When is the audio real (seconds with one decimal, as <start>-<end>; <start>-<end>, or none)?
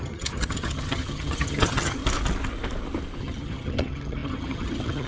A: 2.0-3.2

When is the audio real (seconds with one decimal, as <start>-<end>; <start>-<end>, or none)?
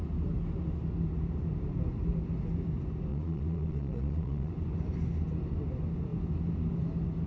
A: 0.0-3.1; 4.5-7.3